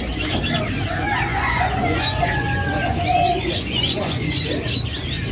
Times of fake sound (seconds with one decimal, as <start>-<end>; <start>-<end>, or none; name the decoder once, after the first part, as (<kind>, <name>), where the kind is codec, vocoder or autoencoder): 1.3-4.5 (vocoder, Vocos)